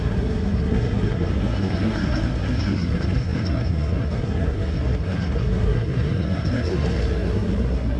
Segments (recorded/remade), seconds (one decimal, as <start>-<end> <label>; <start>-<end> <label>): 0.0-8.0 remade